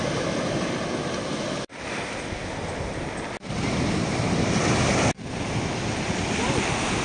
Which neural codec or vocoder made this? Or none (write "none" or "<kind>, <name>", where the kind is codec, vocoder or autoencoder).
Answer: none